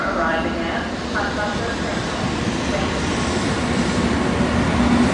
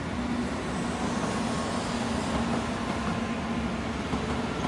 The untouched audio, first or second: second